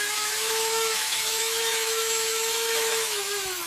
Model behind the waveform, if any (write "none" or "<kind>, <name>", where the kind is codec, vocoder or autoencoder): autoencoder, DAC-VAE